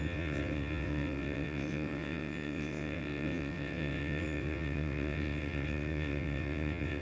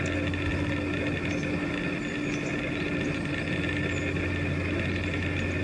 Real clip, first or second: second